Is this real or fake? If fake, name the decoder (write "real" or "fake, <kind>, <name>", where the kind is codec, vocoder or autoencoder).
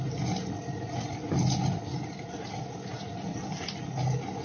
real